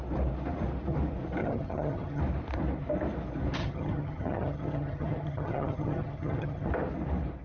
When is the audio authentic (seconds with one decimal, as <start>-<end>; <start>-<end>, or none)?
0.0-1.4; 2.2-3.6; 6.7-7.4